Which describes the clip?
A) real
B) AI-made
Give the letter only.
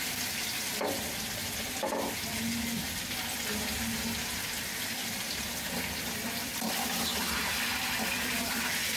A